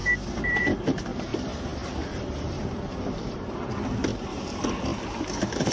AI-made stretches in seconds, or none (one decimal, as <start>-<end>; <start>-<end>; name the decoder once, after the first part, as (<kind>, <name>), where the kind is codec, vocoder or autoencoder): 0.0-1.3 (vocoder, BigVGAN v2); 2.2-5.7